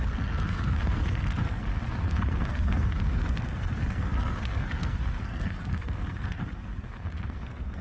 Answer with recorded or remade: remade